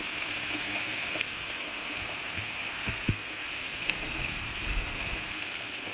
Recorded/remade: remade